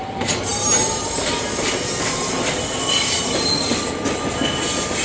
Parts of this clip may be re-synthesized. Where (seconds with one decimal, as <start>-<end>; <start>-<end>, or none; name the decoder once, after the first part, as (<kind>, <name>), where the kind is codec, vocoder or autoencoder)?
none